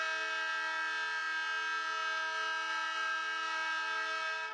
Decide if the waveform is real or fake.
real